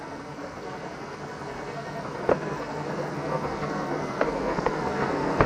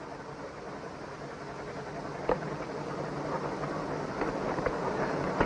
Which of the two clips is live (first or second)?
second